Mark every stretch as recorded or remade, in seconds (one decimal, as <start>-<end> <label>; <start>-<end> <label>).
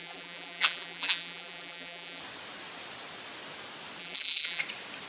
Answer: 0.0-2.2 remade; 2.2-4.0 recorded; 4.0-4.6 remade; 4.6-5.1 recorded